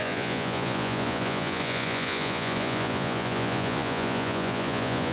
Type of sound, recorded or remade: remade